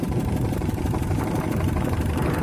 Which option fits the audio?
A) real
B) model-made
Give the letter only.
B